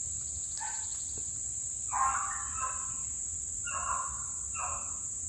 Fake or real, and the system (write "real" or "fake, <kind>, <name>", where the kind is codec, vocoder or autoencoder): real